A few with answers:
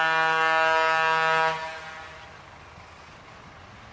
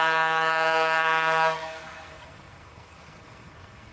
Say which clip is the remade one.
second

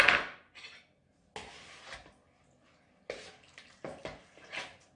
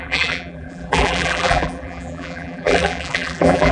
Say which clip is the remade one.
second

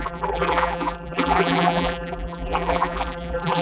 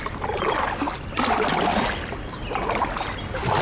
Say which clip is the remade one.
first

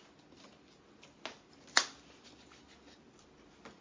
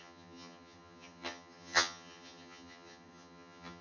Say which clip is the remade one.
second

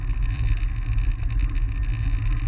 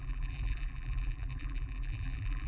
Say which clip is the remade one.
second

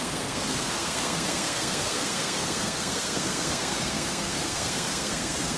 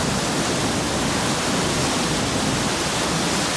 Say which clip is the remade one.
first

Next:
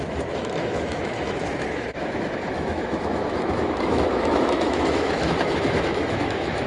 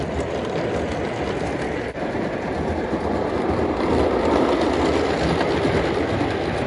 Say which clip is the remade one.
first